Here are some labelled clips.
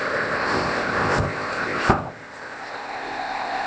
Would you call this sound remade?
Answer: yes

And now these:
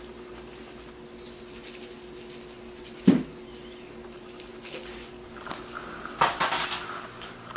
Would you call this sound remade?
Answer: no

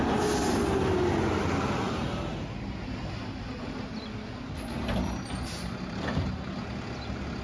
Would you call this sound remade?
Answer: no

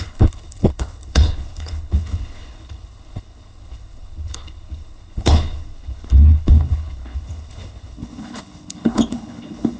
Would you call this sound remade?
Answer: yes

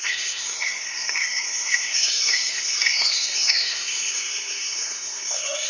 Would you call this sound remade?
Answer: yes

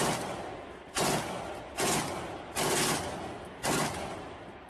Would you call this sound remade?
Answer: no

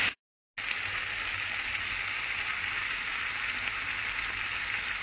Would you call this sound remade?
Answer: no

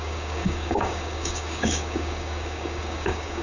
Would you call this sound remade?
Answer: yes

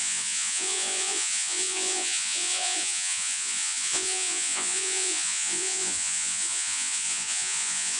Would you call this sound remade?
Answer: yes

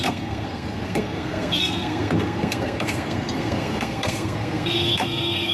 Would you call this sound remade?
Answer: yes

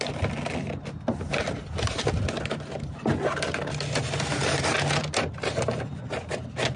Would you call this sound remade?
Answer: no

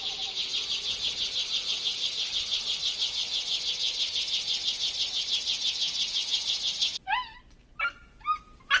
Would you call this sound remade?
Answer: no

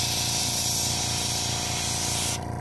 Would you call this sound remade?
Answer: no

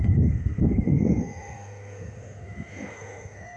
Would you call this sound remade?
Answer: yes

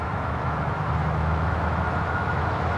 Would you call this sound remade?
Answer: yes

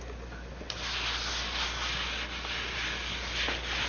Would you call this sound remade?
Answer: no